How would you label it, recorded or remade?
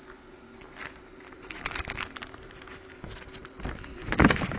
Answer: recorded